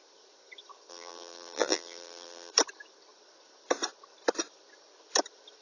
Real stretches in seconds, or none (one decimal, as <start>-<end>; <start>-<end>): 0.0-0.9; 2.5-5.6